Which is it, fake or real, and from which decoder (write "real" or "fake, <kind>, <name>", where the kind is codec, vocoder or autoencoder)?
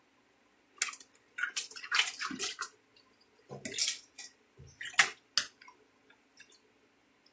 real